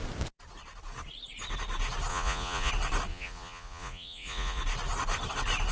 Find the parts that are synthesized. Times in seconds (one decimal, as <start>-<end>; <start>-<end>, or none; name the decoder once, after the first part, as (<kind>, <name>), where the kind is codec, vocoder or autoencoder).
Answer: 2.1-2.7 (vocoder, Vocos); 3.1-4.6